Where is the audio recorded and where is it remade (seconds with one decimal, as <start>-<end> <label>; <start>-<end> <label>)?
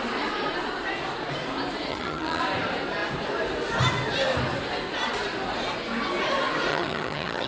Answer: 0.0-1.9 recorded; 1.9-2.4 remade; 2.4-6.7 recorded; 6.7-7.5 remade